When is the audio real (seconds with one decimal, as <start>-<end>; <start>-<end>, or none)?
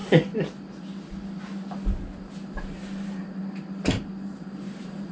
0.0-2.6; 3.4-4.0